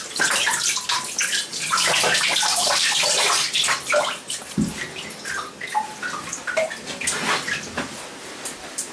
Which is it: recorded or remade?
remade